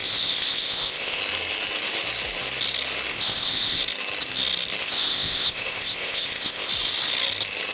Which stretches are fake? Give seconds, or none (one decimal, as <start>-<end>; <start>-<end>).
0.0-1.2; 3.1-3.8; 4.8-6.7

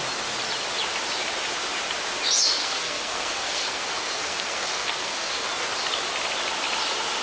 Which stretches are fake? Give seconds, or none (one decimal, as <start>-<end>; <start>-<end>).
2.6-5.5

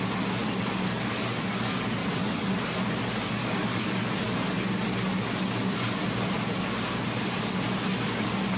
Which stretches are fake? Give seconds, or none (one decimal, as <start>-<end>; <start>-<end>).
2.0-2.6